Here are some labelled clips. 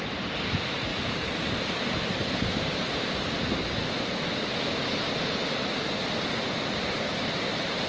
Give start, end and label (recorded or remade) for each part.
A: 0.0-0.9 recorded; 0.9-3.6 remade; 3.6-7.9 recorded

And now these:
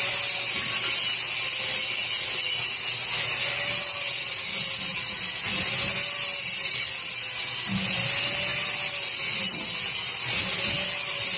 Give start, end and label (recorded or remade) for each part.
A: 0.0-11.4 recorded

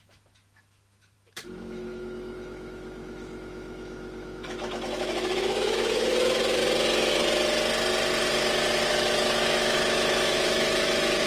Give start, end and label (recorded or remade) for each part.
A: 0.0-6.6 remade; 6.6-8.9 recorded; 8.9-11.3 remade

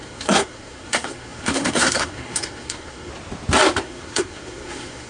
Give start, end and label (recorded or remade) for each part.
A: 0.0-3.1 remade; 3.1-3.8 recorded; 3.8-5.1 remade

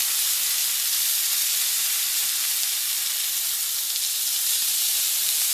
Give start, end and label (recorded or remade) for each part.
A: 0.0-0.6 remade; 0.6-1.7 recorded; 1.7-2.2 remade; 2.2-4.4 recorded; 4.4-5.5 remade

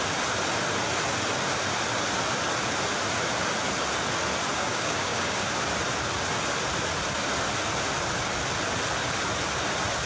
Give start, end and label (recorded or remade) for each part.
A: 0.0-4.6 recorded; 4.6-5.4 remade; 5.4-10.1 recorded